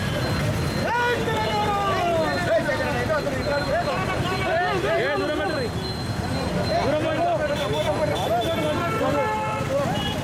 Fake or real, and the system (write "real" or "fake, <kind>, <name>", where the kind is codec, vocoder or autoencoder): real